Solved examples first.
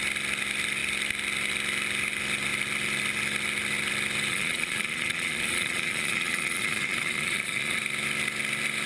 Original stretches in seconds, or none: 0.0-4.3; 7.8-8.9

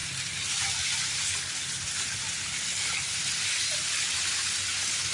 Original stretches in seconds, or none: 0.0-5.1

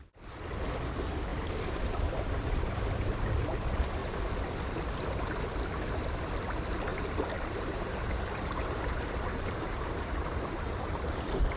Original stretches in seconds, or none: 0.0-1.3; 2.9-6.9